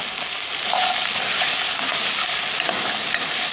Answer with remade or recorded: recorded